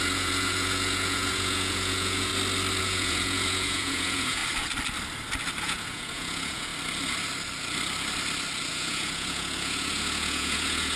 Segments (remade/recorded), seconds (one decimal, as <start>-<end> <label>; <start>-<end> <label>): 0.0-2.3 remade; 2.3-2.8 recorded; 2.8-4.4 remade; 4.4-5.6 recorded; 5.6-6.7 remade; 6.7-8.7 recorded; 8.7-11.0 remade